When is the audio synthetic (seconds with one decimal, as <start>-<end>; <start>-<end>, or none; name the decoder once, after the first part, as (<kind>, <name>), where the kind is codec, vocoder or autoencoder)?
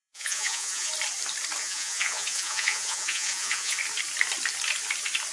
0.0-0.9 (vocoder, Vocos); 1.6-3.8